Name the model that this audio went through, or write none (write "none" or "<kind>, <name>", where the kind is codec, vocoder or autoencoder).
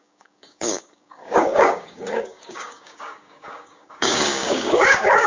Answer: codec, DAC